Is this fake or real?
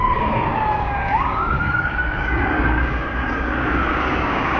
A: fake